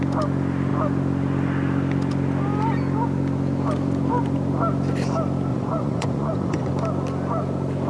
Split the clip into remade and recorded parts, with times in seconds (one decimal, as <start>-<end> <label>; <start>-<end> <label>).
0.0-5.5 recorded; 5.5-6.7 remade; 6.7-7.9 recorded